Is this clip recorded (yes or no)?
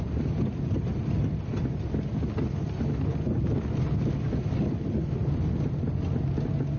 yes